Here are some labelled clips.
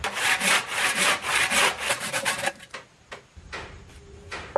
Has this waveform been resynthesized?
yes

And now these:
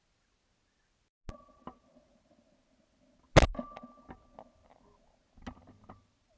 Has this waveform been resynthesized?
no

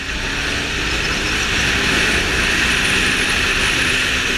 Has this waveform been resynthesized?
no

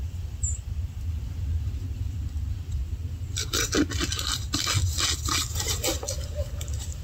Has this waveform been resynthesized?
no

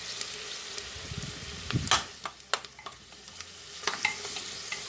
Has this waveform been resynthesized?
no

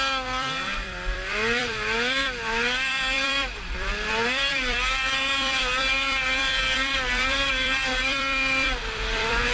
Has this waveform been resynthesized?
yes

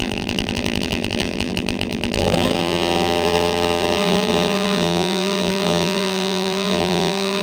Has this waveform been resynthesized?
yes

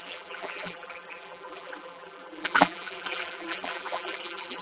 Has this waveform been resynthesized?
yes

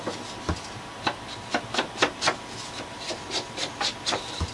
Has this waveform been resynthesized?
no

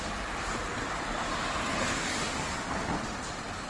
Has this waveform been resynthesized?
no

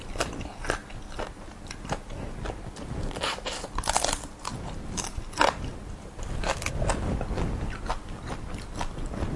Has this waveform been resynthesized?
no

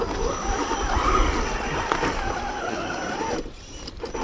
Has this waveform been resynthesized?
yes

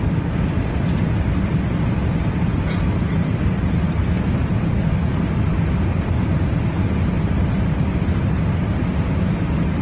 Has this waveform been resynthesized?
no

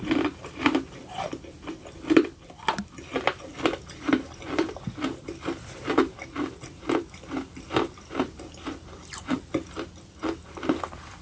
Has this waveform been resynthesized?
yes